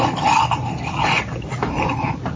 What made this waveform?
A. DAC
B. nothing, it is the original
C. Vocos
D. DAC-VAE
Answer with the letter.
B